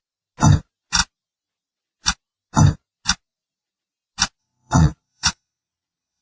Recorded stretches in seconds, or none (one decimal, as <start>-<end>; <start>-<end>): 0.0-4.4